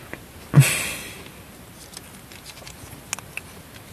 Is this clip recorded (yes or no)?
yes